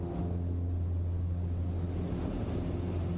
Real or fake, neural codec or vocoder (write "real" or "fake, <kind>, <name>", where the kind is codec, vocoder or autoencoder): real